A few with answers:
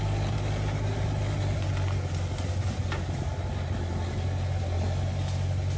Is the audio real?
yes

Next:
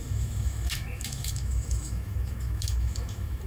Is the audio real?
no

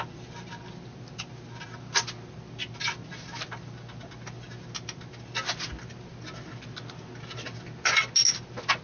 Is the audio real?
yes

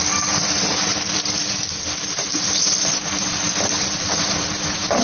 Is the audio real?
no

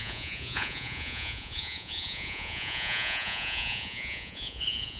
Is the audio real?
no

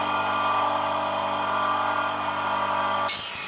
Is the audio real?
yes